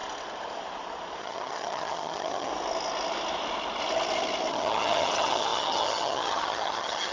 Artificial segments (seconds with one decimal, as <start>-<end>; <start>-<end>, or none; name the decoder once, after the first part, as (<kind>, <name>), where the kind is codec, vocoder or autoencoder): 1.2-2.5 (vocoder, HiFi-GAN); 4.5-7.1